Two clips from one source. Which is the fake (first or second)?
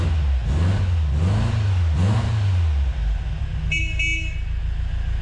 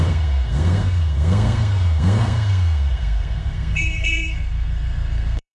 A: second